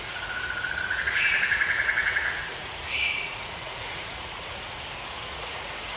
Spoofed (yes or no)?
yes